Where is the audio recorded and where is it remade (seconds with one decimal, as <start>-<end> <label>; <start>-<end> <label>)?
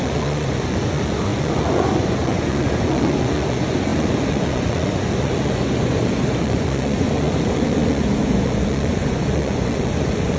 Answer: 0.0-10.4 remade